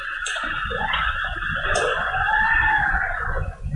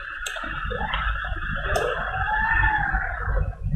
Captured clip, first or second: second